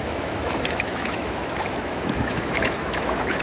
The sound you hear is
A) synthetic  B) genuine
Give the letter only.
A